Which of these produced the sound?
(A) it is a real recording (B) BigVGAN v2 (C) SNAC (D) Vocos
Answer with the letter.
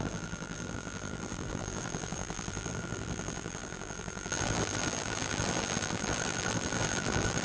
B